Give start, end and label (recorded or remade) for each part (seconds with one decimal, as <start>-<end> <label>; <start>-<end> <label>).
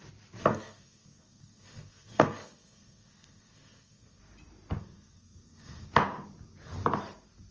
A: 0.0-0.5 recorded; 0.5-4.2 remade; 4.2-4.8 recorded; 4.8-5.9 remade; 5.9-7.5 recorded